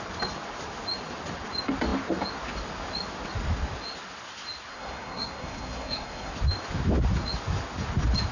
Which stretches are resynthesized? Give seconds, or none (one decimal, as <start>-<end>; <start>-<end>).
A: 4.7-6.3